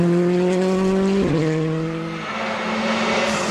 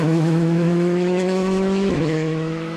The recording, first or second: first